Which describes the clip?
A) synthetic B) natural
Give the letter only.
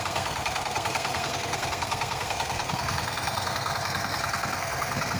A